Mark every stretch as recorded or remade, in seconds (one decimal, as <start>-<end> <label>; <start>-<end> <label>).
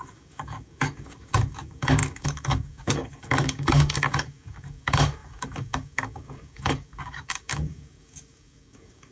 0.0-9.1 remade